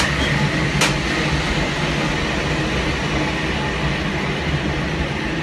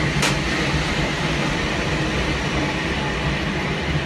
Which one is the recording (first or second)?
first